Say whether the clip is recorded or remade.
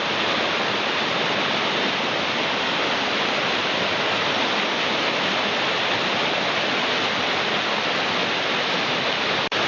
recorded